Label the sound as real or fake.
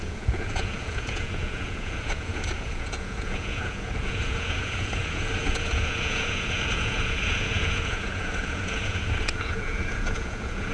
fake